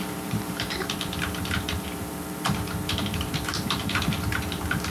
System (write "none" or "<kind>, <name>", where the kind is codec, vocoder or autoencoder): vocoder, BigVGAN v2